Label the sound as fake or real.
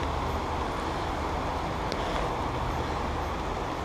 real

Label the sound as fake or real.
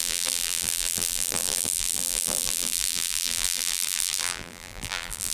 fake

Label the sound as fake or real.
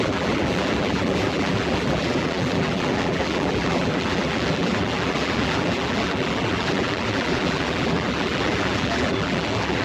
fake